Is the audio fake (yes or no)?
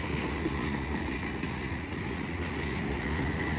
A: yes